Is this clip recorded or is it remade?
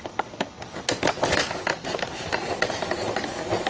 recorded